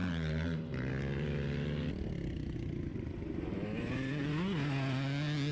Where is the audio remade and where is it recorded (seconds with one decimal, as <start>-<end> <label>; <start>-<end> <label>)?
0.0-0.9 remade; 0.9-2.9 recorded; 2.9-4.3 remade; 4.3-5.5 recorded